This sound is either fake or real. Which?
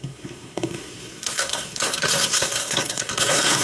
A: fake